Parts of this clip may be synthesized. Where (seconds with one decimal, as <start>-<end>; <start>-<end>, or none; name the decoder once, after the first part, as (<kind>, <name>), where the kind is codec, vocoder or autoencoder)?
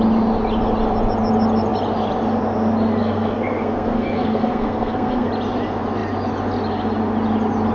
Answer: 3.0-5.3 (codec, SNAC)